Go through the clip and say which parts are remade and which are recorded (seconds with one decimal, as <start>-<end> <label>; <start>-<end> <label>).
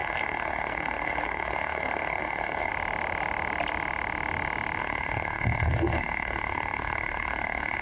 0.0-2.7 remade; 2.7-4.8 recorded; 4.8-7.8 remade